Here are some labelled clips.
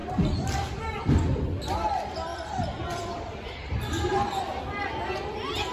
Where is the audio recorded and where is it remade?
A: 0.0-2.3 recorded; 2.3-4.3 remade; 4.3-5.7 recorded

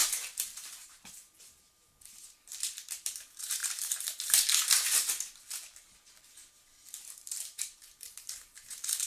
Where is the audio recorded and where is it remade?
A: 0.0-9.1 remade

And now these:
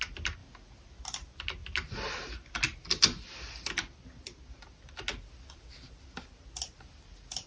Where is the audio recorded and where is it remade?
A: 0.0-7.5 recorded